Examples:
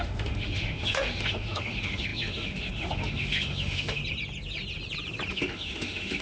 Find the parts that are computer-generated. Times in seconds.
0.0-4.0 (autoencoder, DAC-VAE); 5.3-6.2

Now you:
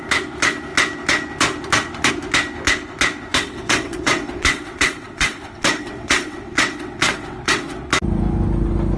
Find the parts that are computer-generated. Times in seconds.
3.3-7.8 (vocoder, WaveNeXt)

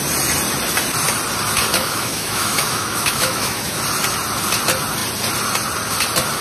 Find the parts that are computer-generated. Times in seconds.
1.7-3.8 (autoencoder, DAC-VAE)

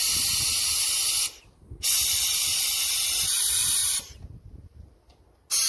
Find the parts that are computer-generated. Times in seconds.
3.8-4.9 (vocoder, BigVGAN v2)

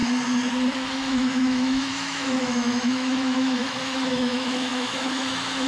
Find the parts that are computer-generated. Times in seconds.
0.9-5.7 (autoencoder, DAC-VAE)

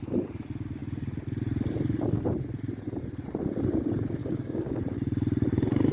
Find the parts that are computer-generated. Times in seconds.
4.2-4.8 (codec, DAC)

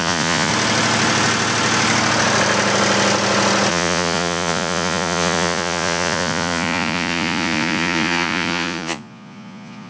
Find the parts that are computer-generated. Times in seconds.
0.0-0.5 (vocoder, Vocos); 3.7-9.9

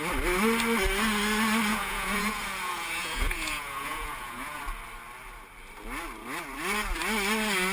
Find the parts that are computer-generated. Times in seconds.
1.7-4.6 (vocoder, Vocos)